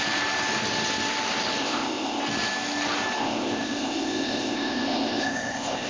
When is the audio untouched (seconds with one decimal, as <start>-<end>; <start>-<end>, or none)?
0.0-1.6; 2.2-3.2